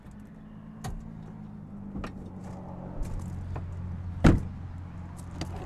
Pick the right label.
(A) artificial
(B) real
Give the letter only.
B